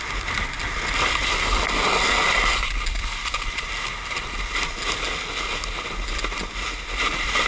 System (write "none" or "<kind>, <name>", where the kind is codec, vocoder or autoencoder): none